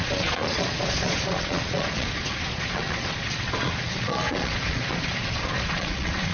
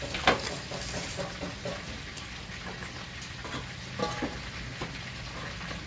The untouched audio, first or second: second